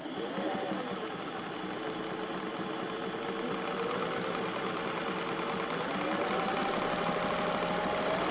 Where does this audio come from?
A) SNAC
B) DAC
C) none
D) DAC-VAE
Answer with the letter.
C